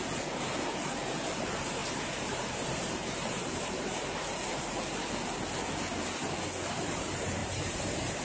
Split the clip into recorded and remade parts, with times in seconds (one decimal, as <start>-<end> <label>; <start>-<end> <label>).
0.0-1.8 recorded; 1.8-4.0 remade; 4.0-7.4 recorded; 7.4-8.2 remade